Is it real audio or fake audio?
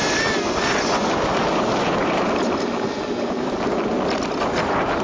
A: real